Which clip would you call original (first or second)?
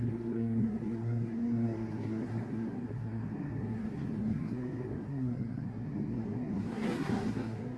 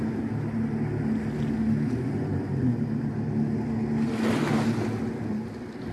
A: second